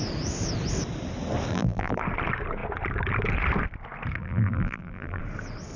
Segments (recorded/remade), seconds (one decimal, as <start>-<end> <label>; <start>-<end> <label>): 0.0-1.5 recorded; 1.5-2.0 remade; 2.0-4.2 recorded; 4.2-5.2 remade; 5.2-5.8 recorded